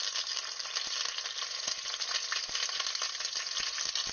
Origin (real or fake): real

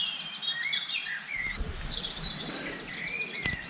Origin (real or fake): real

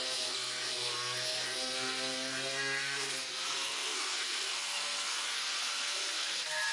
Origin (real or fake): fake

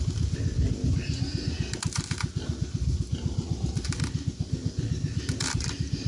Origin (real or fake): real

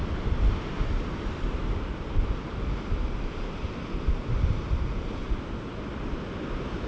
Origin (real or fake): real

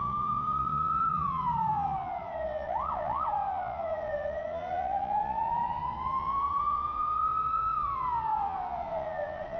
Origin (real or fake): fake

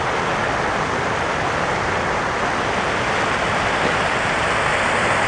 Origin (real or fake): real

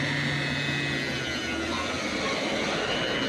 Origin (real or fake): real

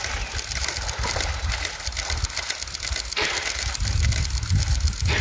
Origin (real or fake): real